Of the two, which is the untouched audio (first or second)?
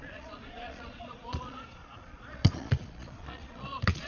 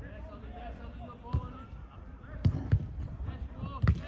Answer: second